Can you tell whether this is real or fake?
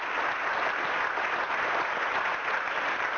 real